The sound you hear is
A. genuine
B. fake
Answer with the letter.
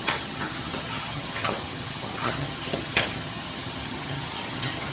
B